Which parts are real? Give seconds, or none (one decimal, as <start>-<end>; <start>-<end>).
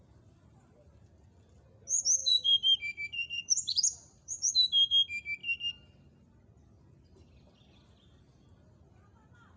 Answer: 0.0-2.2; 4.5-9.6